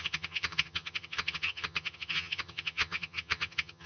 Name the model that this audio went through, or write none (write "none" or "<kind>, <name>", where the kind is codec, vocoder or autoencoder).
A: vocoder, HiFi-GAN